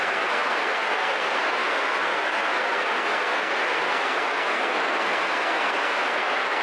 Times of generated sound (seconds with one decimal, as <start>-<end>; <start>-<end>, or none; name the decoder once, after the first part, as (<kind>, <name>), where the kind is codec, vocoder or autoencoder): 0.0-6.6 (codec, SNAC)